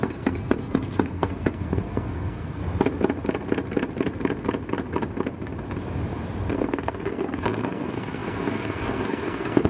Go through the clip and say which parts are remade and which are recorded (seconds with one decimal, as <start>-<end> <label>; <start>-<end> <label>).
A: 0.0-2.6 remade; 2.6-6.5 recorded; 6.5-9.7 remade